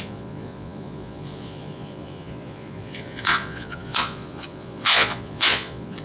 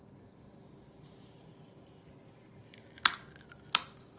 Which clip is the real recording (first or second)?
second